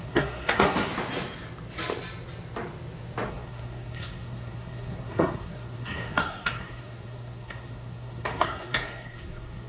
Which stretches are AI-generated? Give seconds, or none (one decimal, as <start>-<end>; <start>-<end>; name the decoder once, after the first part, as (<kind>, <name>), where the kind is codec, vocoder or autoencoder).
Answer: 0.0-0.9 (codec, SNAC); 3.3-9.7